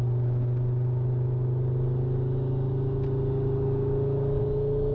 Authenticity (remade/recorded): recorded